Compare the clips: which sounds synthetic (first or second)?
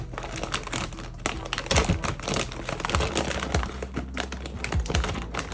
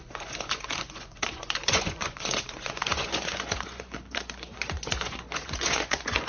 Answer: second